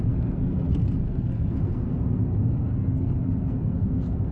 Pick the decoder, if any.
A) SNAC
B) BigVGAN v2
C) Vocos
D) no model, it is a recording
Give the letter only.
A